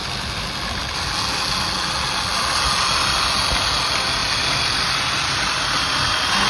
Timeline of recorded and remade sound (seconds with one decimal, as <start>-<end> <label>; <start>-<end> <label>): 0.0-6.5 recorded